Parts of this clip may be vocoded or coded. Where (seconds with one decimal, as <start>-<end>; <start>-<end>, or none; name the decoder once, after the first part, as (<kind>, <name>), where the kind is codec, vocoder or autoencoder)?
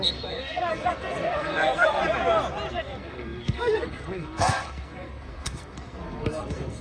0.0-2.0 (codec, SNAC); 2.7-6.8